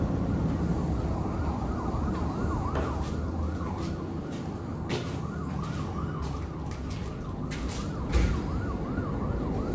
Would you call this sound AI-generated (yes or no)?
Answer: no